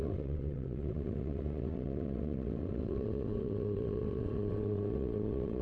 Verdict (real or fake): fake